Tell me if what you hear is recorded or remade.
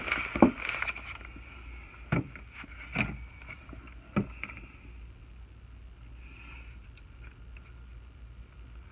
recorded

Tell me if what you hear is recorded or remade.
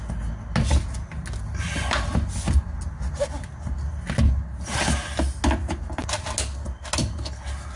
recorded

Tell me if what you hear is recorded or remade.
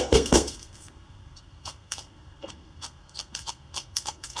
remade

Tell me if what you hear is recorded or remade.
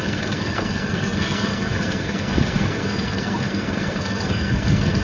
remade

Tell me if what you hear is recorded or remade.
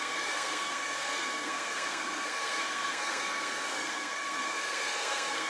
remade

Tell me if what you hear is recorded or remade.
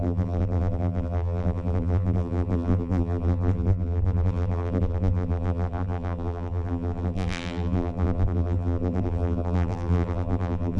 remade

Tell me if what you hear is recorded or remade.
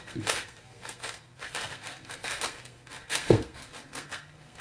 remade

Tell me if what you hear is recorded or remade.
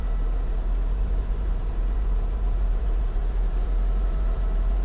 remade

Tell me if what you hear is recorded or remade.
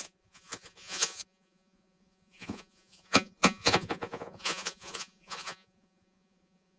remade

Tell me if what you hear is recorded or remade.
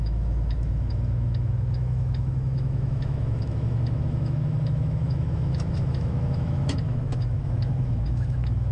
remade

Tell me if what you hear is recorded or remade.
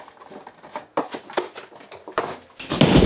recorded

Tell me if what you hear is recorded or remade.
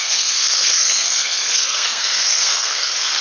remade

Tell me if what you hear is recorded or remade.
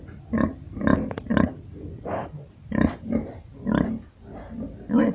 recorded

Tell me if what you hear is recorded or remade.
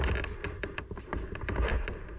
remade